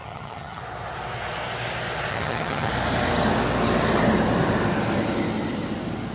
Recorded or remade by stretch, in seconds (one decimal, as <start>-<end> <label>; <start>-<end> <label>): 0.0-0.6 remade; 0.6-2.1 recorded; 2.1-2.7 remade; 2.7-6.1 recorded